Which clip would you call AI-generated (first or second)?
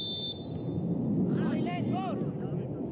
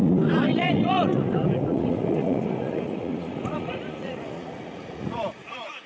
second